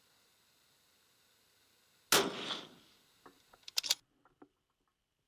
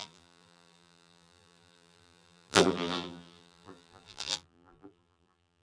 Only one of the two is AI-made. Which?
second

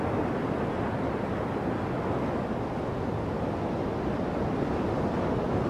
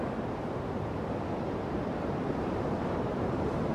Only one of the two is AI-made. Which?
second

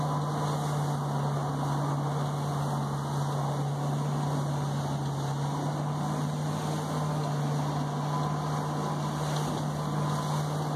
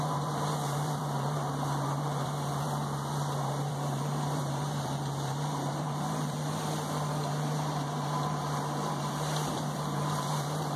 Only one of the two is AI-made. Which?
second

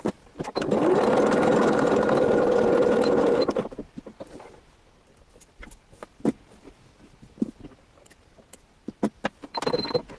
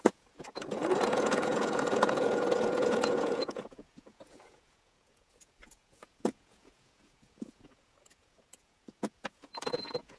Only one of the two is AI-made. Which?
second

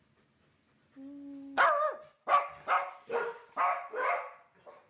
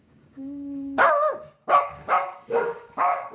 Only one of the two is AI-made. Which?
second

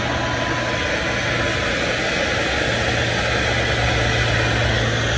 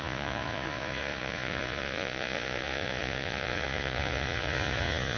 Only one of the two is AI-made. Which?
second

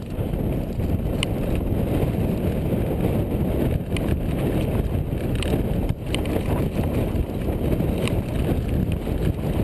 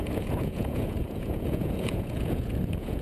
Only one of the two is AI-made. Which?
second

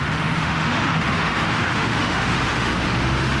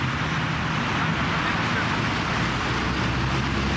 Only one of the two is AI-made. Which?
first